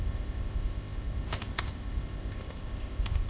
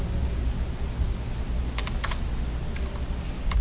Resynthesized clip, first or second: first